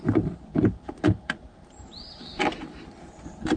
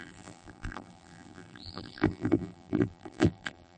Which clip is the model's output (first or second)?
second